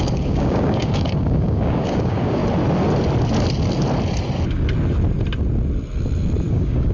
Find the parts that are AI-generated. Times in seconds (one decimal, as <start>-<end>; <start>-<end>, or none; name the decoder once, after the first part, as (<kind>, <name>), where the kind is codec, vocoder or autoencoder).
0.0-2.4 (codec, DAC); 6.5-6.9